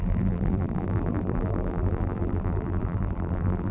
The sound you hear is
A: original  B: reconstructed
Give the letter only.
B